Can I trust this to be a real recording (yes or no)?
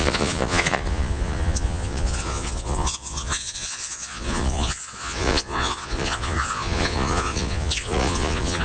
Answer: no